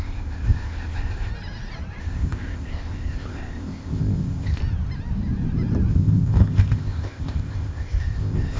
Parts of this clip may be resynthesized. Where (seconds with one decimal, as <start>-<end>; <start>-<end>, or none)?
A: 0.0-1.3; 2.0-4.6; 5.9-8.6